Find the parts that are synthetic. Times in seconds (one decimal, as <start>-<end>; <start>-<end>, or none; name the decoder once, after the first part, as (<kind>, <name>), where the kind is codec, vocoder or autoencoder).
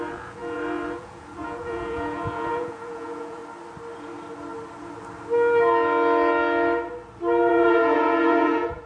0.0-3.4 (vocoder, Vocos); 7.5-8.9